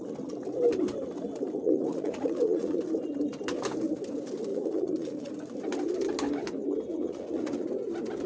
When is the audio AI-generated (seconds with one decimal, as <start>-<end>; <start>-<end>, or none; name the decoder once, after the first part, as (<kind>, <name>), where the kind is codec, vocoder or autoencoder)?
1.6-2.8 (vocoder, Vocos); 4.5-5.3; 6.9-7.7